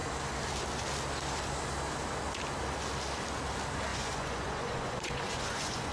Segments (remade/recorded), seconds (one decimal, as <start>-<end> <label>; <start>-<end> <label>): 0.0-3.9 recorded; 3.9-5.9 remade